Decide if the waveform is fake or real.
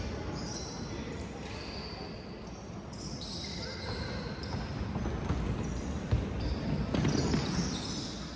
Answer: real